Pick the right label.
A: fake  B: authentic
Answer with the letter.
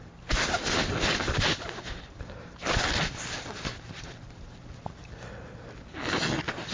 B